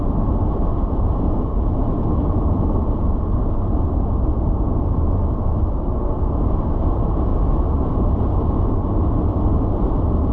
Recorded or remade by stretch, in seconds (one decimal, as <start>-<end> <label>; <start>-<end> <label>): 0.0-10.3 recorded